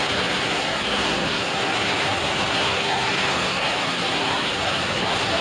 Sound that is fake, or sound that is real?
fake